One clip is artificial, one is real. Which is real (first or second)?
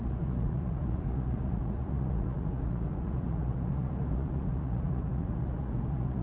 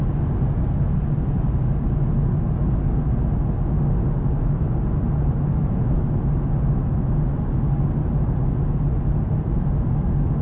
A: second